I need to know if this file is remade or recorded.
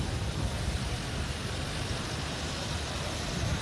remade